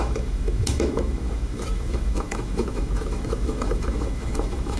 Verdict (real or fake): fake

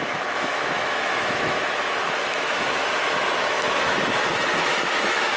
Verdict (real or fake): fake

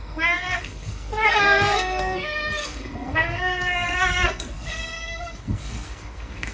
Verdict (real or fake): fake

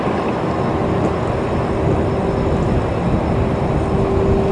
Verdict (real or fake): real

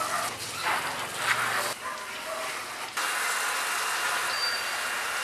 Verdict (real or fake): real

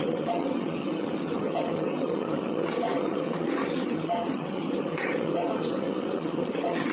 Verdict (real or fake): fake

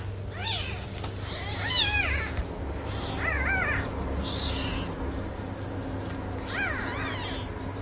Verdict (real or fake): real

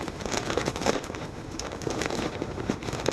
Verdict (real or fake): fake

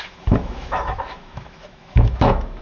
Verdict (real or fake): fake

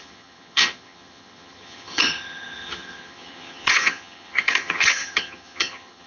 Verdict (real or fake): fake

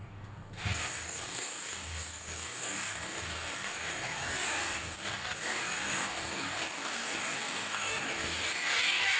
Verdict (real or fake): fake